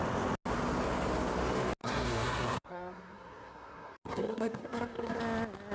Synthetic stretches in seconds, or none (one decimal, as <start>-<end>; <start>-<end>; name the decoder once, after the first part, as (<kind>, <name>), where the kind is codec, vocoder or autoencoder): 1.8-5.2 (codec, SNAC)